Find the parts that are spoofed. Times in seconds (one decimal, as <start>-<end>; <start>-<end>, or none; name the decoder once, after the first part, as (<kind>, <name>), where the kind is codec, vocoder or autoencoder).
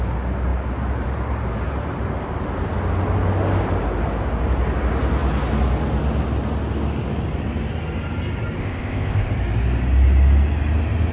8.6-9.3 (codec, ZipCodec)